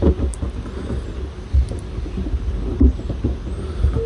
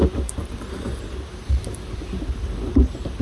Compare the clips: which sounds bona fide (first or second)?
first